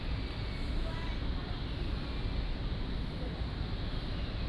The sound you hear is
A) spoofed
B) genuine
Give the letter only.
B